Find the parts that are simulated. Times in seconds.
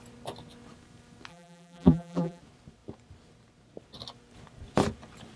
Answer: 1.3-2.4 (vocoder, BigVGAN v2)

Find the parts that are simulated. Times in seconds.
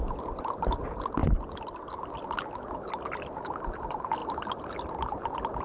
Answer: 4.2-4.9 (vocoder, BigVGAN v2)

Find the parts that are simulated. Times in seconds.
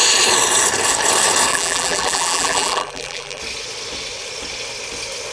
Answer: 1.5-3.4 (vocoder, BigVGAN v2)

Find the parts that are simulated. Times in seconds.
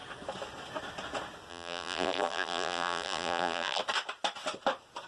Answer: 1.5-3.8 (vocoder, BigVGAN v2)